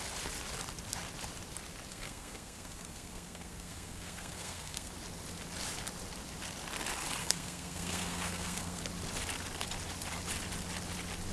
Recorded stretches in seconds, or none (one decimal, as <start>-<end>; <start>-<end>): 0.0-1.9; 4.9-7.2; 8.8-11.3